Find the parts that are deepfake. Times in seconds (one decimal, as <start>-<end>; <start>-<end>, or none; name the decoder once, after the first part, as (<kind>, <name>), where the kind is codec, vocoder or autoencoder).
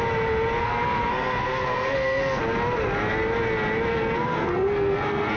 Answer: 0.6-2.4 (codec, SNAC); 3.9-5.4